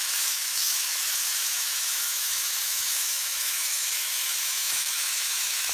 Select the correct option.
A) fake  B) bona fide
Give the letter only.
A